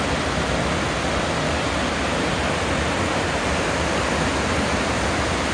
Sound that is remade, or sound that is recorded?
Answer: recorded